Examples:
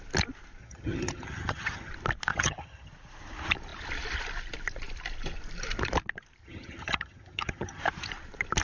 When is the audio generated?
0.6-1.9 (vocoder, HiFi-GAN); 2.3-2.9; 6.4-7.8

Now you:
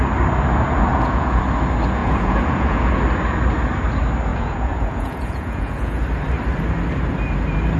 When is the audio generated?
0.9-1.4 (vocoder, Vocos); 2.0-3.0; 4.3-6.0

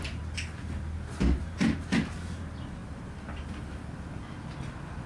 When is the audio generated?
2.8-4.4 (vocoder, BigVGAN v2)

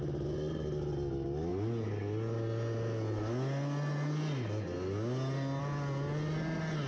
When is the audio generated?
none

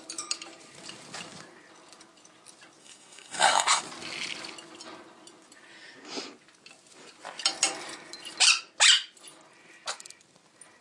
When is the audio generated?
2.8-3.8 (codec, SNAC)

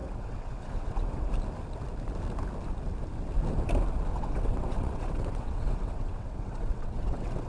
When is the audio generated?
0.0-1.3 (vocoder, WaveNeXt); 4.1-7.5